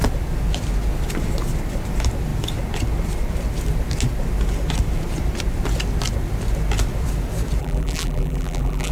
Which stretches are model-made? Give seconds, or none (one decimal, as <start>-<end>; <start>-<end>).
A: 7.6-8.9